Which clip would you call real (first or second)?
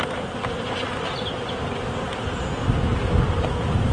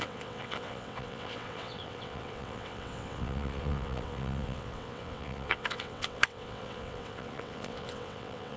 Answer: first